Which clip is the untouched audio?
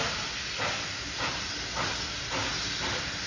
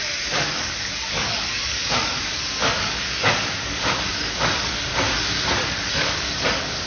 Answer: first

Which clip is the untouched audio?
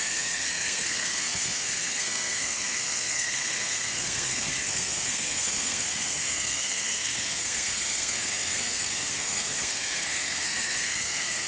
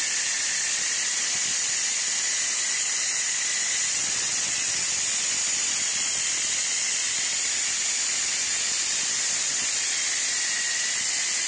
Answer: second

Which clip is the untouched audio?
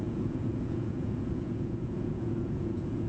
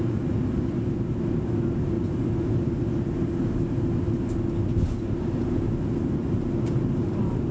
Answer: second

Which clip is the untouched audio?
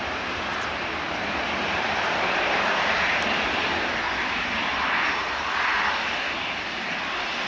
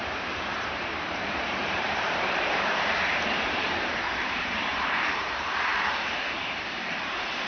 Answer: first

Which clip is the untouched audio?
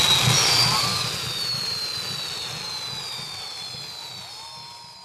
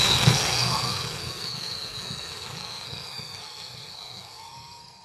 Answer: first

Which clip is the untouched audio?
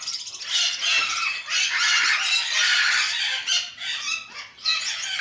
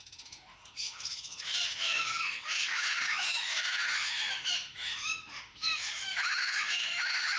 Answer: first